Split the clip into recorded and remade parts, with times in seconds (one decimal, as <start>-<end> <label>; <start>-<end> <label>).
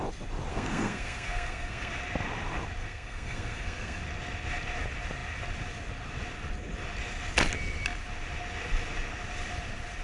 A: 0.0-0.5 recorded; 0.5-1.9 remade; 1.9-2.8 recorded; 2.8-4.0 remade; 4.0-10.0 recorded